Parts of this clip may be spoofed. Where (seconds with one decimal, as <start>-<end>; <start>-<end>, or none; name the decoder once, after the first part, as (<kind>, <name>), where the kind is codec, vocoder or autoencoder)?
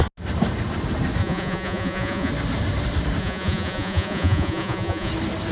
1.2-2.3 (vocoder, Vocos); 3.2-5.1